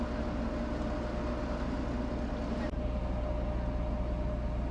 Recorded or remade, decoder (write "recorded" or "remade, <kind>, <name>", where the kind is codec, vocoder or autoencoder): recorded